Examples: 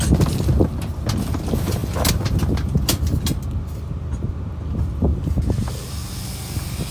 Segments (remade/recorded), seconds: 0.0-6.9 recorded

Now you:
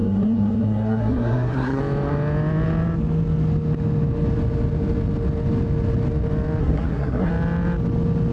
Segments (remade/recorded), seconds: 0.0-1.8 remade; 1.8-6.6 recorded; 6.6-7.3 remade; 7.3-8.3 recorded

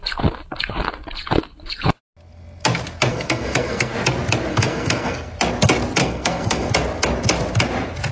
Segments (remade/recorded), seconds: 0.0-3.1 recorded; 3.1-3.9 remade; 3.9-4.5 recorded; 4.5-5.3 remade; 5.3-6.0 recorded; 6.0-6.7 remade; 6.7-8.1 recorded

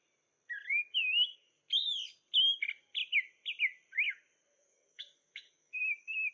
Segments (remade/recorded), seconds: 0.0-1.0 recorded; 1.0-1.6 remade; 1.6-4.5 recorded; 4.5-6.3 remade

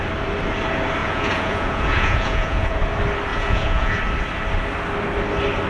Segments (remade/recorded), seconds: 0.0-1.0 recorded; 1.0-2.8 remade; 2.8-3.3 recorded; 3.3-4.0 remade; 4.0-5.7 recorded

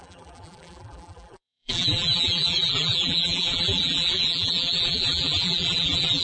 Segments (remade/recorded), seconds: 0.0-6.2 remade